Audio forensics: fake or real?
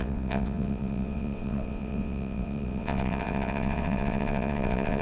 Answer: fake